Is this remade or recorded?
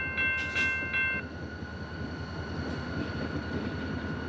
recorded